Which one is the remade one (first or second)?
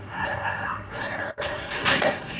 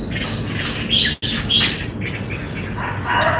first